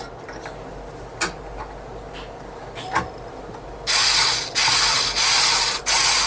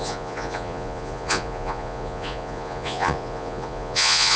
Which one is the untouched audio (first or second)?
first